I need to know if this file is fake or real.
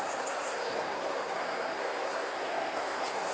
fake